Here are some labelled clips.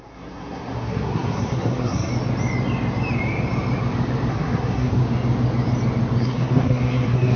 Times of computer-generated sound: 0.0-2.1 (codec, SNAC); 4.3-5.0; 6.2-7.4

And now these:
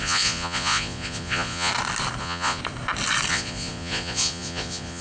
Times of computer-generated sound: 0.0-1.7 (vocoder, Vocos); 2.2-2.6; 3.3-5.0

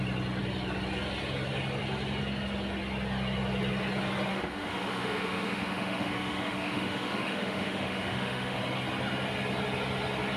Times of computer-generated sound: 4.3-8.6 (autoencoder, DAC-VAE)

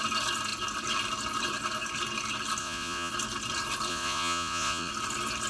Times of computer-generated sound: 2.6-3.1 (vocoder, Vocos); 3.9-4.9

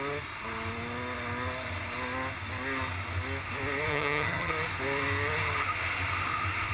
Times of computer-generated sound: 3.9-4.5 (vocoder, HiFi-GAN)

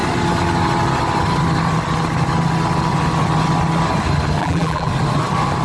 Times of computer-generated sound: 4.4-4.9 (vocoder, BigVGAN v2)

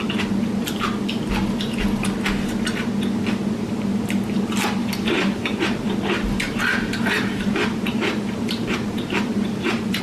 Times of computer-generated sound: 4.8-10.0 (vocoder, BigVGAN v2)

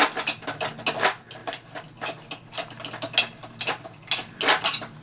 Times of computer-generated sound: none